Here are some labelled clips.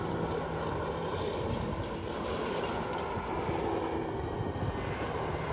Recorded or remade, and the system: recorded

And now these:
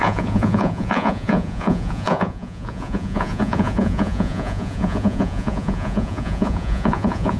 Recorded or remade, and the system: remade, vocoder, Vocos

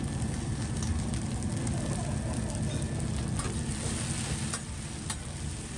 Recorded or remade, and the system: recorded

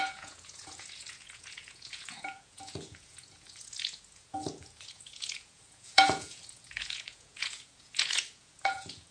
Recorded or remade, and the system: remade, vocoder, Vocos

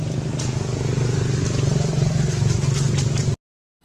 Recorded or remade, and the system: recorded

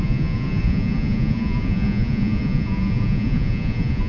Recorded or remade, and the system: remade, vocoder, Vocos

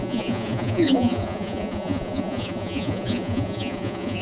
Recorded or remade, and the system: remade, vocoder, Vocos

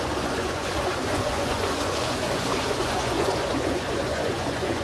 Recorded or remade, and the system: remade, vocoder, Vocos